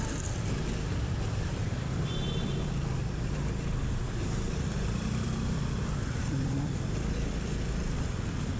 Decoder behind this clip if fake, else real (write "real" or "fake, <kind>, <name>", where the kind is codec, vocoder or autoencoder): fake, vocoder, BigVGAN v2